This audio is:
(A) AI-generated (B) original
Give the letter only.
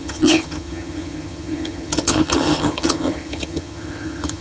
A